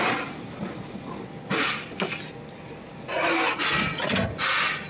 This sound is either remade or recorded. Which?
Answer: recorded